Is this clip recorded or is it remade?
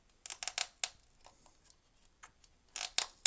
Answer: recorded